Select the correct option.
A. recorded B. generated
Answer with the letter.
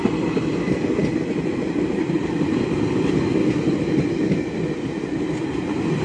A